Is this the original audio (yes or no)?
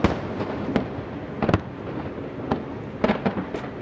yes